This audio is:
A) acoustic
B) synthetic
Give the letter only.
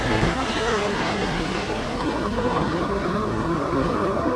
B